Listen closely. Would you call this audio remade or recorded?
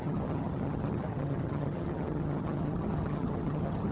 remade